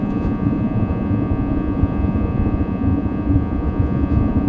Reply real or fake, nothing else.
fake